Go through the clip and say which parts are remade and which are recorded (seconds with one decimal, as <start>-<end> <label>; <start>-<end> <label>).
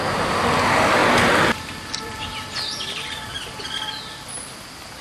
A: 0.0-1.0 recorded; 1.0-4.0 remade; 4.0-5.0 recorded